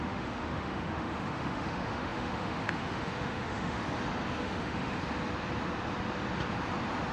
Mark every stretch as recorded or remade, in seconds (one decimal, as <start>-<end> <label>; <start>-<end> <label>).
0.0-3.8 remade; 3.8-4.4 recorded; 4.4-5.0 remade; 5.0-7.1 recorded